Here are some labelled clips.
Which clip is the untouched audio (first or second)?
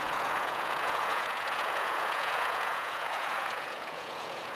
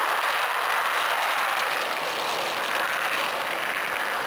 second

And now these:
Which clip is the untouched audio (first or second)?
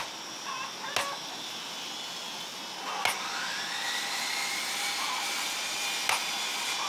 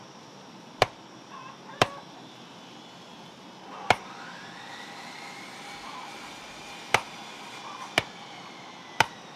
first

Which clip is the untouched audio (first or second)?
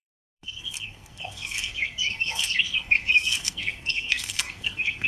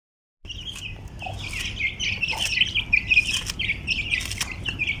second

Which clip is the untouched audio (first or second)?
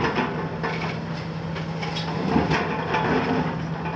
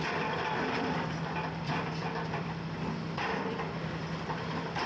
first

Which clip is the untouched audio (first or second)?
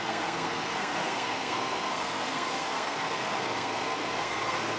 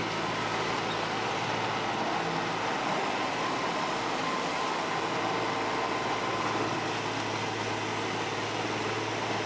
second